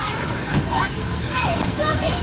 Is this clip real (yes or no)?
no